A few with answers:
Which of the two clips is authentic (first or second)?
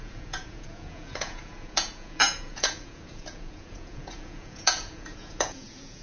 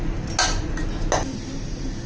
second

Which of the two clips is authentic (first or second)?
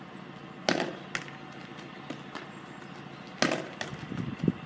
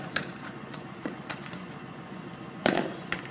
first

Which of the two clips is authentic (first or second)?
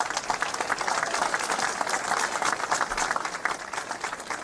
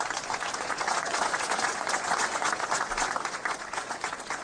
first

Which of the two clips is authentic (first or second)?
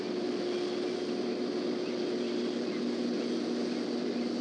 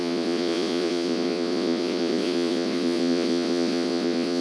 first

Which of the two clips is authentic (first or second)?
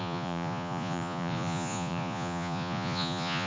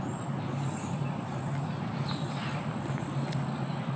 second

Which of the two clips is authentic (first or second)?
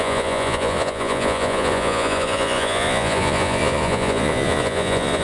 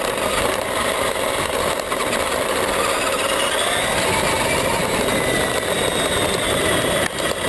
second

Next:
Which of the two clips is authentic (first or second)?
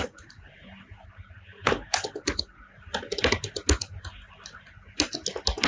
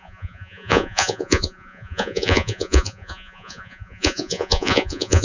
first